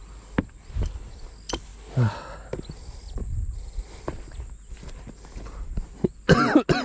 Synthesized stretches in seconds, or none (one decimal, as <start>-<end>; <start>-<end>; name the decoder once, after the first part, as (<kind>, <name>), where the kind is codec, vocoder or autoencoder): none